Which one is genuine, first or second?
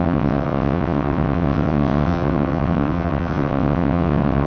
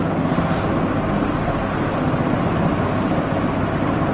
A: second